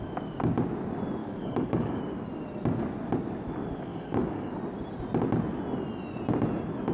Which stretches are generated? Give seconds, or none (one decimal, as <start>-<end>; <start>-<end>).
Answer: 1.2-2.0; 3.9-4.5

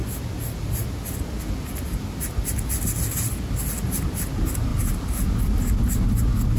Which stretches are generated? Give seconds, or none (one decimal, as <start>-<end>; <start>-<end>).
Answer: none

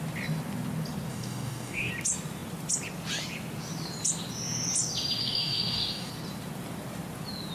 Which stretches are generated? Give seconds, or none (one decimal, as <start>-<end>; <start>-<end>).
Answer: 1.1-1.9; 5.2-6.1